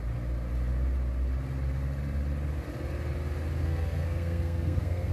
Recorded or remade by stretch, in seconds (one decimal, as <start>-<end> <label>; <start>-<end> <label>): 0.0-3.6 recorded; 3.6-5.1 remade